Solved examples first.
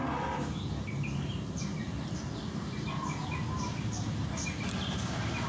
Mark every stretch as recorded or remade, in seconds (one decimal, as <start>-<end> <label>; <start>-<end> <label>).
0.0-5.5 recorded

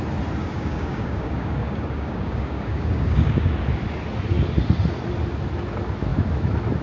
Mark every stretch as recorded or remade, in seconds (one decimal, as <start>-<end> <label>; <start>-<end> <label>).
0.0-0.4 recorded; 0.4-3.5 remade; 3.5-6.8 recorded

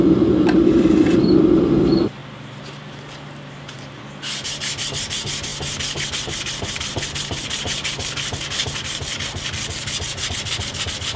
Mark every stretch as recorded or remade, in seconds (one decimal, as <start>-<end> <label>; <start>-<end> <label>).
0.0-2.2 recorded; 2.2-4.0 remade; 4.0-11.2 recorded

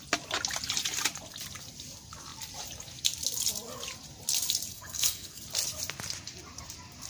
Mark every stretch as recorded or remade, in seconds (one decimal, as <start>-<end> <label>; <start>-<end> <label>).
0.0-4.7 recorded; 4.7-5.4 remade; 5.4-7.1 recorded